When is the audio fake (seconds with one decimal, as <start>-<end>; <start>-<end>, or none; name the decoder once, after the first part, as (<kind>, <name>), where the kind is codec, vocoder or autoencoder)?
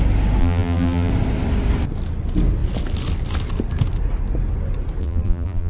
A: 0.4-1.1 (vocoder, BigVGAN v2); 5.0-5.7